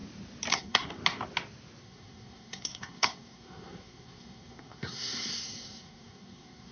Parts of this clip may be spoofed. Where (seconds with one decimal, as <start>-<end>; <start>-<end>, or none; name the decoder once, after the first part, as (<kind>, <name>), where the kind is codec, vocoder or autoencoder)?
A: 0.5-1.0 (codec, SNAC); 1.8-6.7